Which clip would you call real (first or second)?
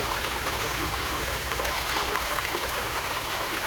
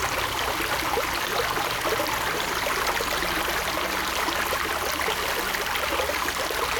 second